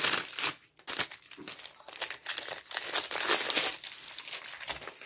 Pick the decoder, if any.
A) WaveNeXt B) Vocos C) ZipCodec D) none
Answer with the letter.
D